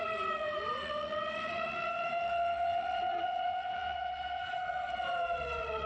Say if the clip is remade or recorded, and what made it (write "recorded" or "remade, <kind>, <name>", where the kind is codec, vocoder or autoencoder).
remade, vocoder, WaveNeXt